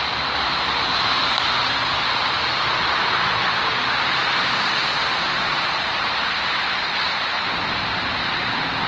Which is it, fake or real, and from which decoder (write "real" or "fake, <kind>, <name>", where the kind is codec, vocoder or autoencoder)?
fake, vocoder, BigVGAN v2